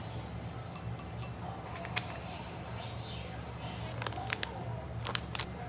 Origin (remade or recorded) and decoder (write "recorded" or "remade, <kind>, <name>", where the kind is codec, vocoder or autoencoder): recorded